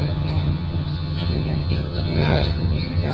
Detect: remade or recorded remade